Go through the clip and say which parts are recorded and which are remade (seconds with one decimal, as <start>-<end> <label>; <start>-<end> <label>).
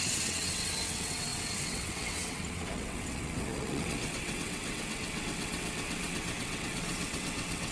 0.0-7.7 remade